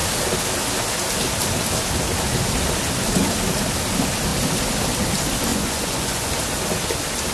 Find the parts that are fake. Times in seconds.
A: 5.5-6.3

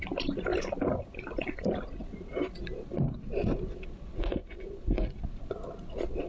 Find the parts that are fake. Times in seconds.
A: none

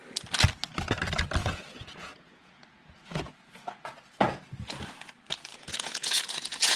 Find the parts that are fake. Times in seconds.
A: 1.4-4.4; 5.5-6.8

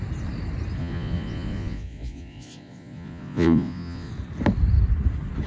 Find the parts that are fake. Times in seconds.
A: 0.8-4.1

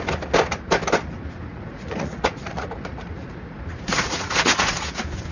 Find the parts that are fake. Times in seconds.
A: 1.5-4.7

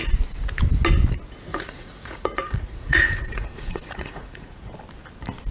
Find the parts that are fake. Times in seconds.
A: 1.5-4.7